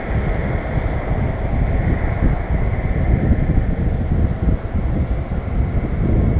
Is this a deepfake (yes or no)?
no